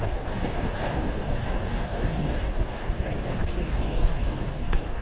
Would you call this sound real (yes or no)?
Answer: no